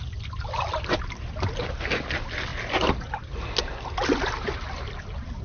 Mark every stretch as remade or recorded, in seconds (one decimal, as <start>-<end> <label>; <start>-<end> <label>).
0.0-2.0 recorded; 2.0-2.5 remade; 2.5-5.0 recorded; 5.0-5.4 remade